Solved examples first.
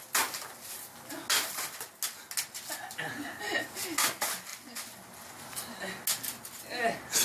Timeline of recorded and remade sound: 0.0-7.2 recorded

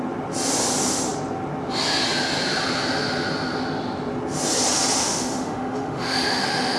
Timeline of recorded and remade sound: 0.0-5.0 recorded; 5.0-6.8 remade

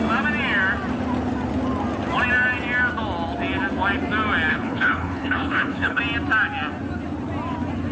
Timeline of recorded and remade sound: 0.0-4.5 recorded; 4.5-6.0 remade; 6.0-7.9 recorded

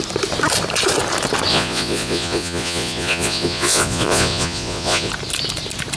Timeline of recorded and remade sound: 0.0-1.5 recorded; 1.5-5.1 remade; 5.1-6.0 recorded